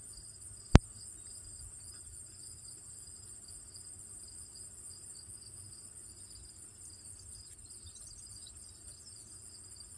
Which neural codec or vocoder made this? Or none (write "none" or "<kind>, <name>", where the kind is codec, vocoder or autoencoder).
none